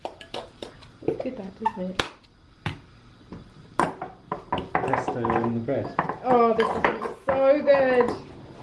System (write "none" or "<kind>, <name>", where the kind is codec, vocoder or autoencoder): none